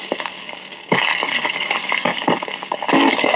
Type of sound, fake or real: fake